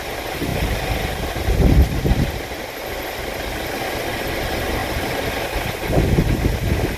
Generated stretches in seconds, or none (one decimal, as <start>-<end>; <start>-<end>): 4.8-5.3